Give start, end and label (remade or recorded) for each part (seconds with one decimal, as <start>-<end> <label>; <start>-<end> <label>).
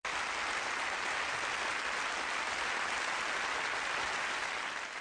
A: 0.0-5.0 recorded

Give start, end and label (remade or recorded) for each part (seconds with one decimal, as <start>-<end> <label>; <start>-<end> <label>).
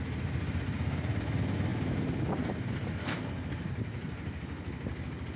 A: 0.0-5.4 recorded